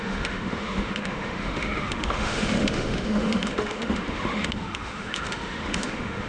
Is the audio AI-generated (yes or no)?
yes